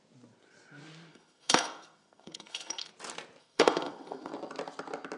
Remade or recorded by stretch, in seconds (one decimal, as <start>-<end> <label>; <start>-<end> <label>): 0.0-1.1 recorded; 1.1-2.9 remade; 2.9-3.4 recorded; 3.4-4.3 remade; 4.3-5.2 recorded